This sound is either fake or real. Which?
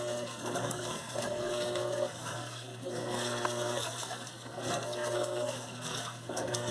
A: fake